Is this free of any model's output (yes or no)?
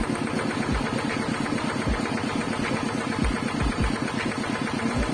yes